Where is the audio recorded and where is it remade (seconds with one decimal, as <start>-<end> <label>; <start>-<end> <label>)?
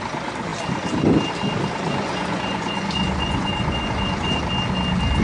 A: 0.0-1.9 recorded; 1.9-4.4 remade; 4.4-5.2 recorded